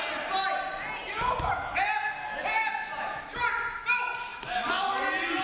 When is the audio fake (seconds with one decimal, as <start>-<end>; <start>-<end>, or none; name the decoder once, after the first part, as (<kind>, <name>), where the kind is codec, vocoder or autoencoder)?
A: none